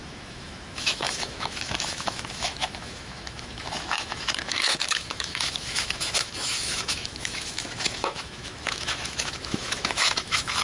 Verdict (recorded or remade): remade